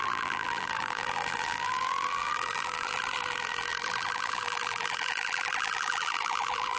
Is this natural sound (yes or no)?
no